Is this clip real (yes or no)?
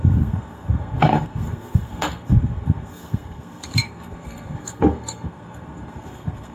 no